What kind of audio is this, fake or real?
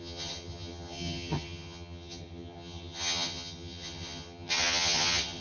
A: fake